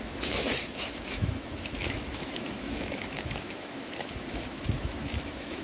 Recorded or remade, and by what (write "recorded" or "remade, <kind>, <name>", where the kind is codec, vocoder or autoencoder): remade, autoencoder, DAC-VAE